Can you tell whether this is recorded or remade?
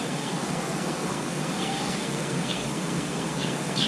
remade